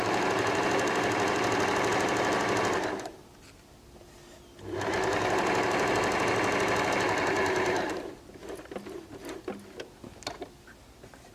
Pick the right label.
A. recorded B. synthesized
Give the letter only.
A